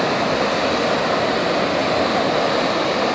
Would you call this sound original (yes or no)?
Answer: yes